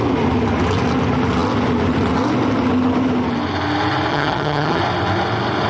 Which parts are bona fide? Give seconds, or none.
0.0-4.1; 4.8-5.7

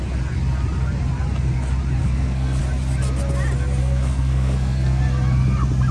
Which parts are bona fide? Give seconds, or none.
0.0-2.0; 2.6-3.8; 5.0-5.9

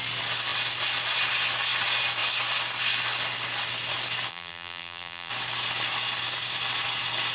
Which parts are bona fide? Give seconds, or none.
0.0-4.3; 5.3-7.3

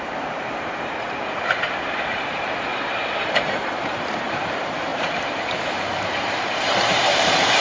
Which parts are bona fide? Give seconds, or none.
none

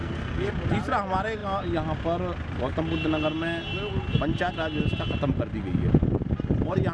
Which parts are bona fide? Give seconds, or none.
0.5-6.9

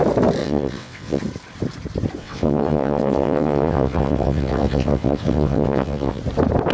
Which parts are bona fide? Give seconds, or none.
0.0-0.4; 1.2-2.2; 6.2-6.7

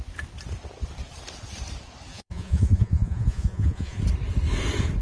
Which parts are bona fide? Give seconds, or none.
0.0-2.1; 4.0-5.0

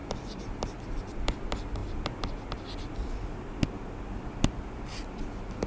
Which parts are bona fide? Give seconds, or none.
0.0-5.7